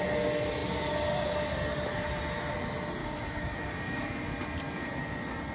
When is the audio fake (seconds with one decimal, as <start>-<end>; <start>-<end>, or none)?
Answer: 3.0-4.1